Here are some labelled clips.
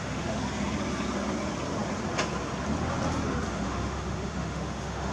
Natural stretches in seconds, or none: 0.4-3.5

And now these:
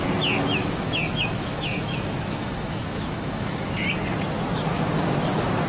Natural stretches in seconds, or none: 0.0-0.5; 3.7-5.7